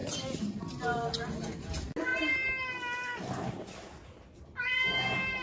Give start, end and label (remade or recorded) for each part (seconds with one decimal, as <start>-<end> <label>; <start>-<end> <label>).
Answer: 0.0-5.4 recorded